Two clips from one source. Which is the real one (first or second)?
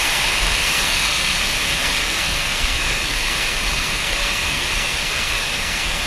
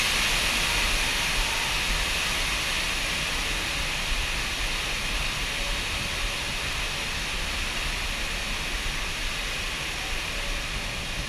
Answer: second